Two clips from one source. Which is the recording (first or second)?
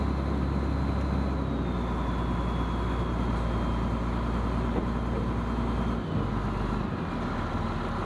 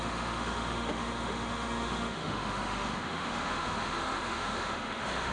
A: first